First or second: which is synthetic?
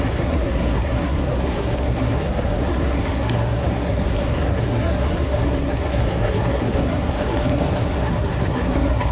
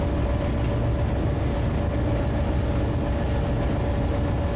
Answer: first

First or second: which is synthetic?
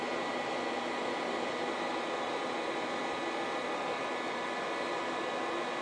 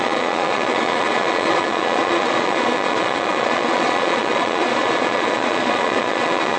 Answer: second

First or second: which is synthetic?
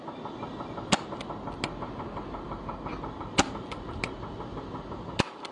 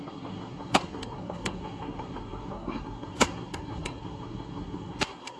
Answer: second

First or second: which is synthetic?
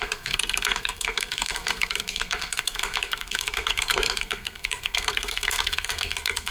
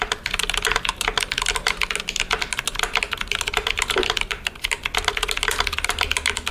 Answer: first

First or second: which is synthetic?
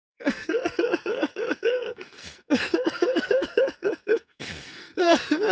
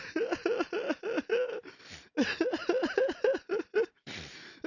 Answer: first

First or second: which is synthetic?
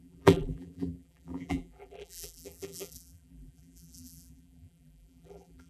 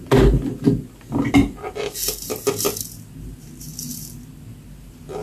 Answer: first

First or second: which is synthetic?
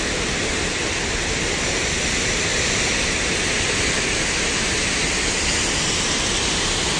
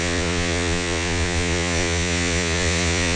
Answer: second